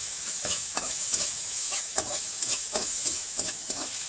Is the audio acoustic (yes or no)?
no